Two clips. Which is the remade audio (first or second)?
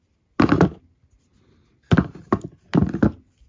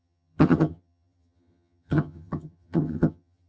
second